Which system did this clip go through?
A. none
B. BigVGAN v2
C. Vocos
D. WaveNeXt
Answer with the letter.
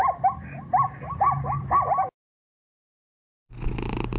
A